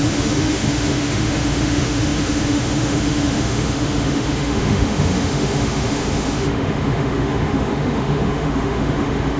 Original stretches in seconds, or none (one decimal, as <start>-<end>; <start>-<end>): none